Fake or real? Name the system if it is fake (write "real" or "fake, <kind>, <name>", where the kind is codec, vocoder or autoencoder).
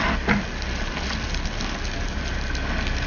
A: real